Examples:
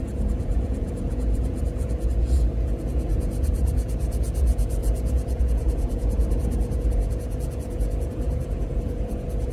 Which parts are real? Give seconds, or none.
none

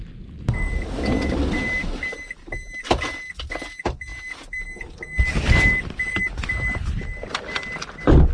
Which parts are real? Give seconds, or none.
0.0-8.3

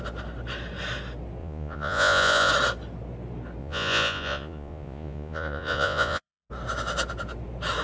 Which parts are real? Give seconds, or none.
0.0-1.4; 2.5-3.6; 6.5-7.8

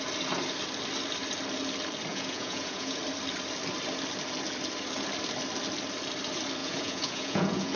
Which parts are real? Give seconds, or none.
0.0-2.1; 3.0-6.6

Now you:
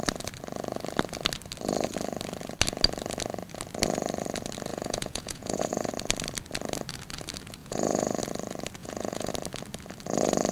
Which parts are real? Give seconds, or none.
0.0-4.7; 5.9-7.6; 8.2-8.8; 9.3-10.5

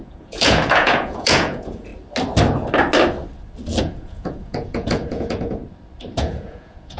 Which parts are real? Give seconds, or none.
1.9-3.8; 5.6-6.2

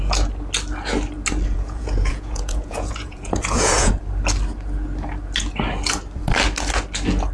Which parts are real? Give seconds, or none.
0.0-1.5; 3.9-7.3